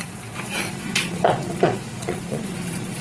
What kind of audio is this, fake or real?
fake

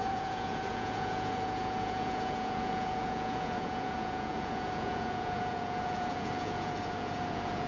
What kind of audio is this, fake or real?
fake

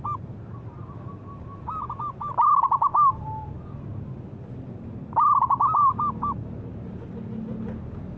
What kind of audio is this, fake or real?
real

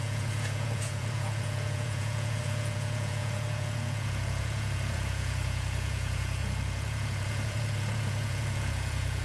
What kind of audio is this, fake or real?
fake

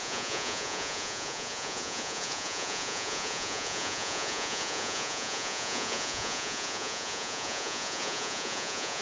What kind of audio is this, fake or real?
fake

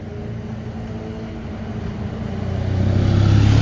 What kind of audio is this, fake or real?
real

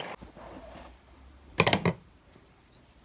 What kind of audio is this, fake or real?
real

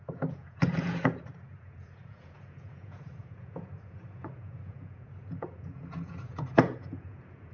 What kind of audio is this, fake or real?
fake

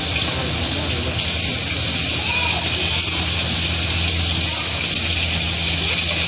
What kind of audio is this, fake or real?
real